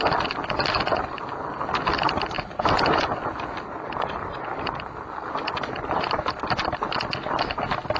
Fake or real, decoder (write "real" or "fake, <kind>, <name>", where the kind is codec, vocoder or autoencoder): real